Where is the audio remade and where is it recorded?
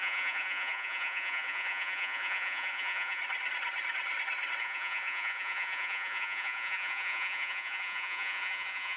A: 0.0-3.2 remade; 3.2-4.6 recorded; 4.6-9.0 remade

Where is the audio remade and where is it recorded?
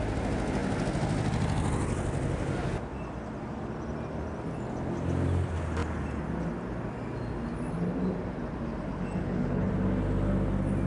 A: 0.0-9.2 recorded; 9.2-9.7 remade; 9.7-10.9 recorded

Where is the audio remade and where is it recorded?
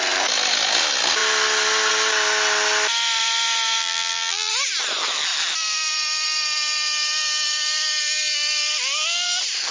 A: 0.0-3.8 recorded; 3.8-4.5 remade; 4.5-9.7 recorded